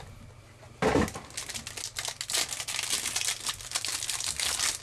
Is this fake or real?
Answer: real